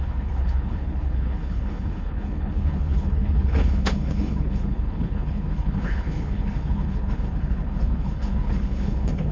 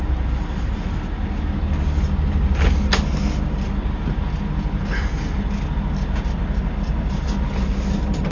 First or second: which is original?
second